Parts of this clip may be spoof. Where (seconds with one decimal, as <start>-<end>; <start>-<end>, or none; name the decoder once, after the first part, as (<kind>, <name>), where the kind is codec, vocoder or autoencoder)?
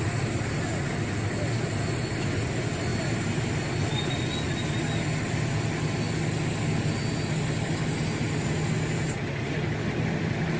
none